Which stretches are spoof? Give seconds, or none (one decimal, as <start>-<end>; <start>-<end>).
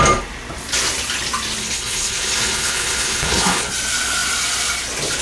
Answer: 1.6-3.7